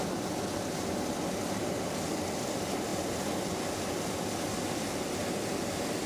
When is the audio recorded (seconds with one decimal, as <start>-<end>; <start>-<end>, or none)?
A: 1.4-6.1